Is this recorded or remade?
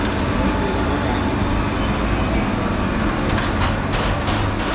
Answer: recorded